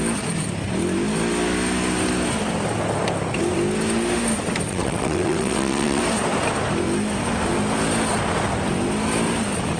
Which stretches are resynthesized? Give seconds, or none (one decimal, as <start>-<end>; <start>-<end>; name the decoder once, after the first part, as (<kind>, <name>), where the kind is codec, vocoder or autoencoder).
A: 4.7-6.0 (vocoder, WaveNeXt)